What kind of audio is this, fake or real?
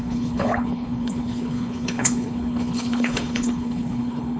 fake